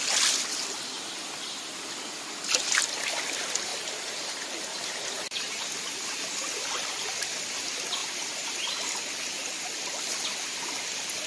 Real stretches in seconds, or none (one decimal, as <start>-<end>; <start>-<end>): 0.0-3.7; 5.8-8.0; 8.6-11.3